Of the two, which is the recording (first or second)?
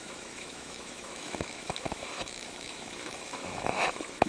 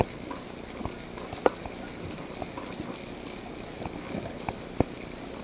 second